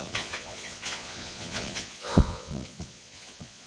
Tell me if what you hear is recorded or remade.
remade